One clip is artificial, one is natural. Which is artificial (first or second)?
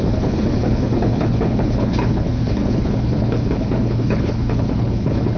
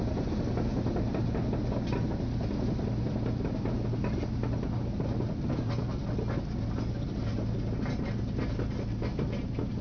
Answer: first